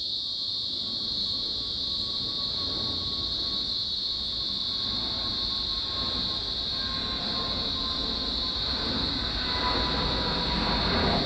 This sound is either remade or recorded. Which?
recorded